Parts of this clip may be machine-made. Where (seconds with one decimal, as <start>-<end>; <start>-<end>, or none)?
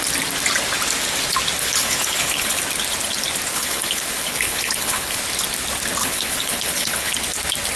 1.6-2.6; 3.5-5.2; 6.0-7.1